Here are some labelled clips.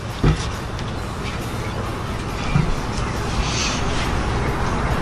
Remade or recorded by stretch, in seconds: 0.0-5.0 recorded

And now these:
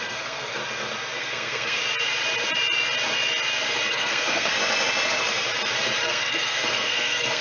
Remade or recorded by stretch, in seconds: 0.0-0.6 remade; 0.6-1.2 recorded; 1.2-1.8 remade; 1.8-3.9 recorded; 3.9-4.5 remade; 4.5-6.0 recorded; 6.0-7.4 remade

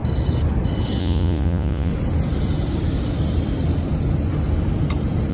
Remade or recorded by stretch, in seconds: 0.0-1.0 recorded; 1.0-1.9 remade; 1.9-5.3 recorded

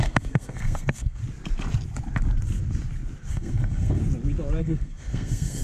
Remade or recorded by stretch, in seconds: 0.0-1.2 remade; 1.2-3.3 recorded; 3.3-4.0 remade; 4.0-4.6 recorded; 4.6-5.6 remade